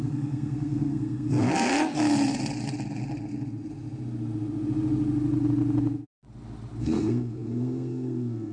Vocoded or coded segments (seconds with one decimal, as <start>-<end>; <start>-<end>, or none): 0.0-1.7; 6.8-8.5